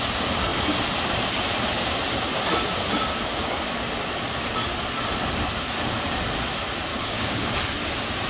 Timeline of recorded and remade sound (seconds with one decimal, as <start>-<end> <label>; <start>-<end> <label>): 0.0-6.9 recorded; 6.9-7.5 remade; 7.5-8.3 recorded